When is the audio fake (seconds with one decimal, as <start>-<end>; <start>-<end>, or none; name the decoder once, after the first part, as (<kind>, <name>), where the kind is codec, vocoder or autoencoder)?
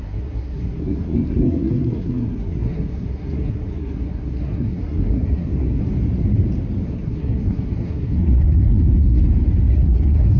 0.0-5.8 (codec, SNAC); 6.8-8.8; 9.7-10.4